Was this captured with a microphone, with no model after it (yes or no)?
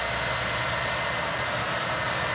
yes